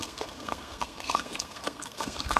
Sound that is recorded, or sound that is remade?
remade